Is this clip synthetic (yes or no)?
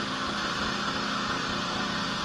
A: no